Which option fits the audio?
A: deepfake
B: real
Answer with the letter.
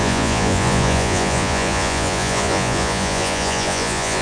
A